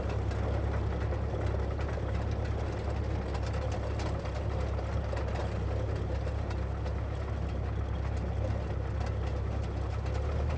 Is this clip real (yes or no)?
yes